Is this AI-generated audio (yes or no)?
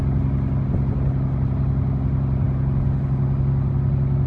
no